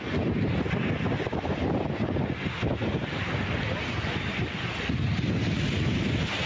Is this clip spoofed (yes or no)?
no